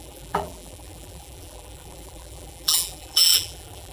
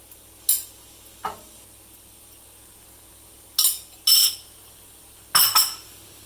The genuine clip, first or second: second